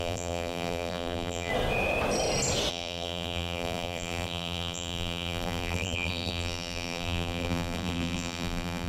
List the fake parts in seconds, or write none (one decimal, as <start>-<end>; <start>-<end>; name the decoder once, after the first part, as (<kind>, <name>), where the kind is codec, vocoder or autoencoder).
0.0-1.5 (vocoder, BigVGAN v2); 2.7-8.9